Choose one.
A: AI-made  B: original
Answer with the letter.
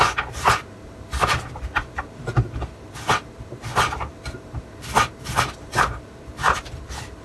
A